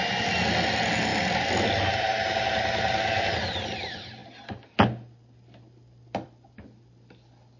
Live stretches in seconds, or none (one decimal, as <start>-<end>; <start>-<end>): 0.0-7.6